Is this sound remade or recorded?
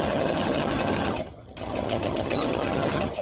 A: remade